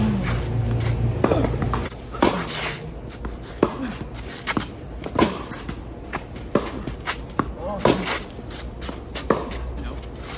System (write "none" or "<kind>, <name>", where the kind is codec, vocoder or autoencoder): none